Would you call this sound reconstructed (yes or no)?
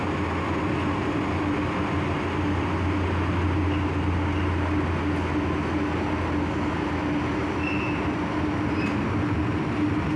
no